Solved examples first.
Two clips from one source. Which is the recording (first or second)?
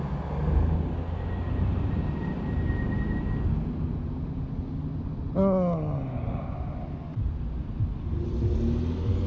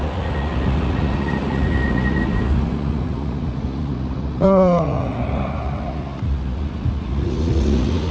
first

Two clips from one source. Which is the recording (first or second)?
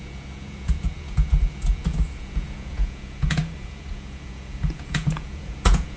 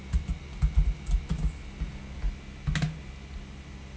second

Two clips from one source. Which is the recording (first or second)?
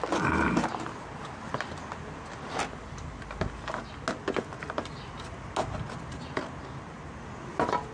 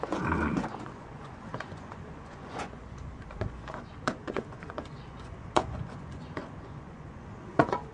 first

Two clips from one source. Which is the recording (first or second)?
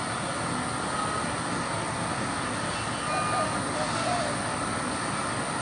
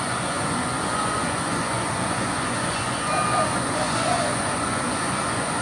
first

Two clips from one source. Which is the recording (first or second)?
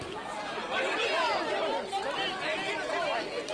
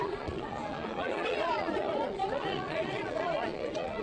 first